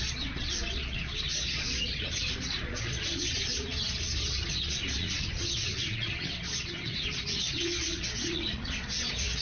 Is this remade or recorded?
remade